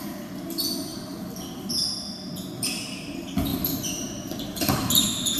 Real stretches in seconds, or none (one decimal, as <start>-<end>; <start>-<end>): 0.0-3.5; 4.9-5.4